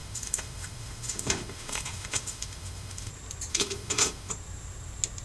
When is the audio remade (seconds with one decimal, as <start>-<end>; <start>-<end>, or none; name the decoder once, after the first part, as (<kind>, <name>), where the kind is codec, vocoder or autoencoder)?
0.0-3.1 (autoencoder, DAC-VAE); 3.5-4.3